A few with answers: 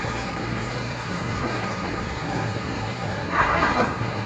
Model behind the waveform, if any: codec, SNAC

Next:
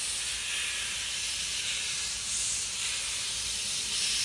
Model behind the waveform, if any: none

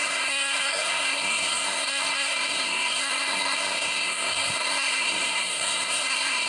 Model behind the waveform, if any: codec, SNAC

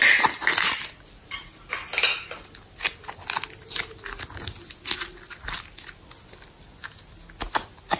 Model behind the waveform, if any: none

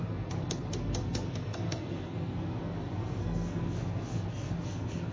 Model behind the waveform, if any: codec, SNAC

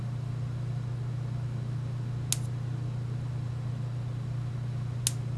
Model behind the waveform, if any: none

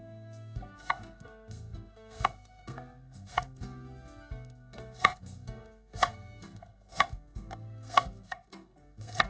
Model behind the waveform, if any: codec, SNAC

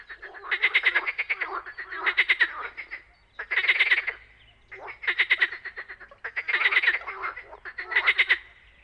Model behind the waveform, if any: none